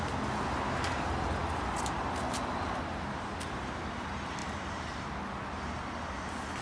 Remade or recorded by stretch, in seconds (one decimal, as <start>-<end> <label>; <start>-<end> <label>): 0.0-4.4 recorded; 4.4-5.1 remade; 5.1-6.6 recorded

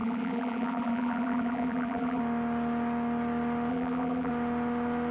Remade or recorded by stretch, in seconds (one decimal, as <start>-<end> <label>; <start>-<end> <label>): 0.0-2.2 remade; 2.2-3.7 recorded; 3.7-4.3 remade; 4.3-5.1 recorded

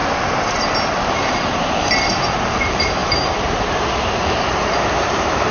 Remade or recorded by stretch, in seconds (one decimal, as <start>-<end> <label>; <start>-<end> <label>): 0.0-0.9 recorded; 0.9-5.5 remade

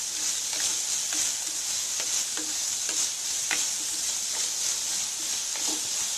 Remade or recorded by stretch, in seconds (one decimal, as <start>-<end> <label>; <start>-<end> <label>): 0.0-6.2 recorded